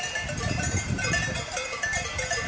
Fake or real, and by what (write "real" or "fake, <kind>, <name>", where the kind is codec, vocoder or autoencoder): fake, vocoder, BigVGAN v2